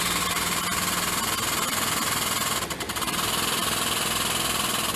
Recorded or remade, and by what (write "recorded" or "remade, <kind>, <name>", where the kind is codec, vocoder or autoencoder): recorded